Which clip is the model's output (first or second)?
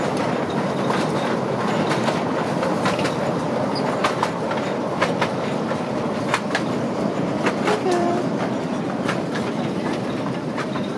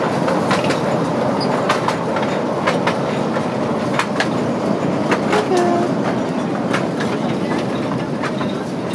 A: first